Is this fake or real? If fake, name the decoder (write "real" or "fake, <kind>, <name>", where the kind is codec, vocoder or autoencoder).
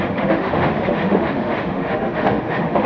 fake, autoencoder, DAC-VAE